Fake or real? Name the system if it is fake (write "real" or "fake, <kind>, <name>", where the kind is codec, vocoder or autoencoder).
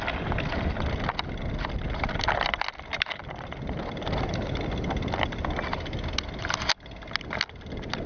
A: real